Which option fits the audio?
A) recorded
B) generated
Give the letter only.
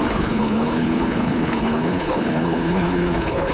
B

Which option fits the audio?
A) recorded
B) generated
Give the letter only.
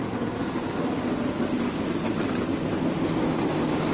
A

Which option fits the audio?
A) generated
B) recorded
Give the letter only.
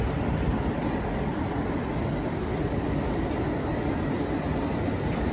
B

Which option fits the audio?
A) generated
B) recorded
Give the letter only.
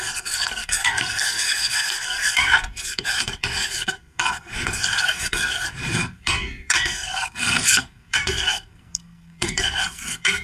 A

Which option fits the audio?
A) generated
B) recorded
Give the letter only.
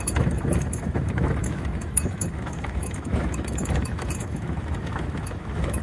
A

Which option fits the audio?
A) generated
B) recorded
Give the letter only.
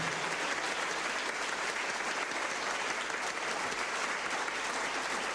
B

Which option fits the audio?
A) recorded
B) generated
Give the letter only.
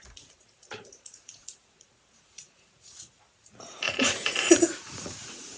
B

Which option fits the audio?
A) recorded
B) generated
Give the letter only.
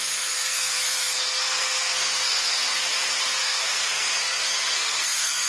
B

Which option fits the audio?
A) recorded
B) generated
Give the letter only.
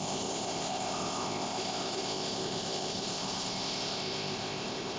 B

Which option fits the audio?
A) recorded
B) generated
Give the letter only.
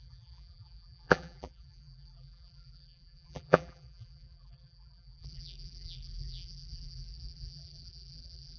B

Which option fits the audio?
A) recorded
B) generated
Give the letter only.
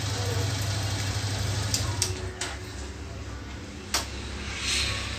A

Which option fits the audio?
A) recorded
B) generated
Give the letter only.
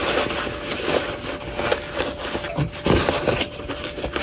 A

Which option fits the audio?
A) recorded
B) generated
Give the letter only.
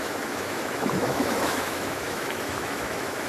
B